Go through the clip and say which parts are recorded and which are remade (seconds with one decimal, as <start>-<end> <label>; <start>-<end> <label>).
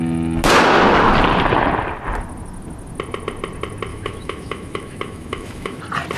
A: 0.0-3.9 recorded; 3.9-5.8 remade; 5.8-6.2 recorded